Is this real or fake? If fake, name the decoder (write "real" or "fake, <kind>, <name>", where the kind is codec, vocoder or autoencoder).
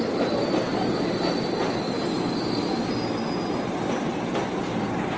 real